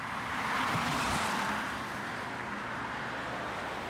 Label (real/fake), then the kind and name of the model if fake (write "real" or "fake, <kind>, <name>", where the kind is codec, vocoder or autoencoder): real